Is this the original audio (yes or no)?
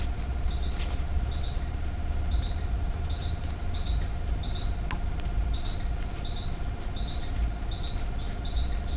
yes